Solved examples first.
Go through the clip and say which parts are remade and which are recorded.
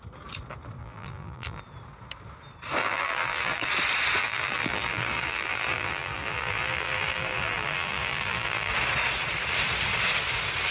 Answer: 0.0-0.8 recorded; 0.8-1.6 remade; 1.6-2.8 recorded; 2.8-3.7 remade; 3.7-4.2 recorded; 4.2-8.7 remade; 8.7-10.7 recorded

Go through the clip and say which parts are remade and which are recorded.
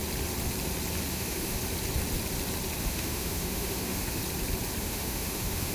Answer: 0.0-1.1 recorded; 1.1-1.6 remade; 1.6-2.8 recorded; 2.8-4.2 remade; 4.2-4.8 recorded; 4.8-5.7 remade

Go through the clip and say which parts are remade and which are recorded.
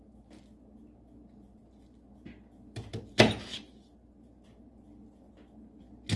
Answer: 0.0-6.2 recorded